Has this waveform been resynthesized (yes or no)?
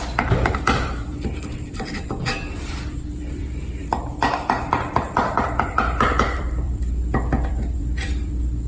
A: yes